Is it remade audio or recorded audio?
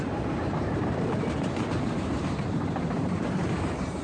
remade